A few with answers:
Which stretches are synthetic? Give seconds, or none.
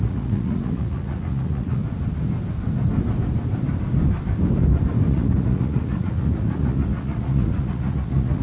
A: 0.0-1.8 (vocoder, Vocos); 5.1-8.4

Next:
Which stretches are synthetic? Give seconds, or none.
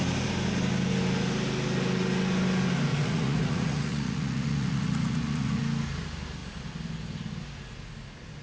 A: 2.9-5.6 (vocoder, Vocos)